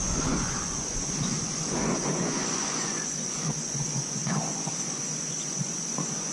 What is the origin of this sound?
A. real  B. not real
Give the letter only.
B